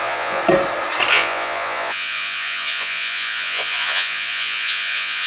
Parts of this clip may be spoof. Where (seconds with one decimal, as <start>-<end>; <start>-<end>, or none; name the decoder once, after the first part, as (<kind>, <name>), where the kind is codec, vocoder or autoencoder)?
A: 0.0-0.4 (vocoder, Vocos); 1.1-5.3